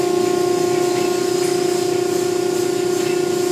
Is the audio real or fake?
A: real